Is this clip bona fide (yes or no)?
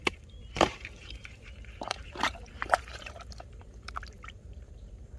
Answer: no